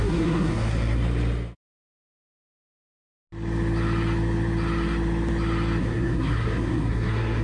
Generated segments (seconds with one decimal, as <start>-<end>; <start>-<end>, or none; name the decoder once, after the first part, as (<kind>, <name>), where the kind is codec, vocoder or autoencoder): 0.0-1.0 (codec, SNAC); 1.9-3.0; 5.8-7.4